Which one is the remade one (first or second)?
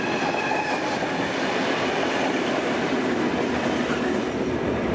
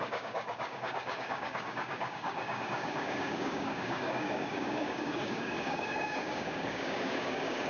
second